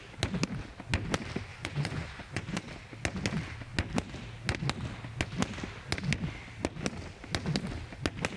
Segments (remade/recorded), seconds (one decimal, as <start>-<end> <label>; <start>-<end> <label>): 0.0-1.5 recorded; 1.5-2.7 remade; 2.7-8.4 recorded